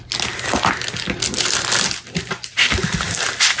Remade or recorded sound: recorded